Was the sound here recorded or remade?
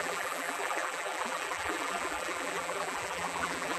remade